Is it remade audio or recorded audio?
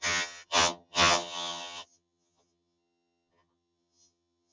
remade